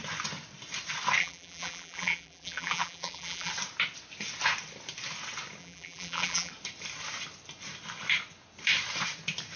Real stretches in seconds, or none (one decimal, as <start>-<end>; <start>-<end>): 0.0-1.2; 3.5-5.6; 6.5-9.6